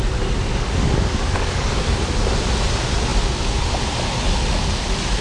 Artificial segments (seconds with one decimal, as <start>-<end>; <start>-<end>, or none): 0.5-1.8